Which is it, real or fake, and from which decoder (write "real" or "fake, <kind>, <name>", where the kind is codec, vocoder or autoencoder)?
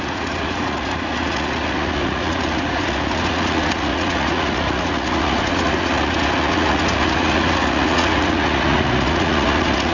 fake, vocoder, Vocos